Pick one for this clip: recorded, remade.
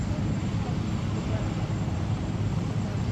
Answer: remade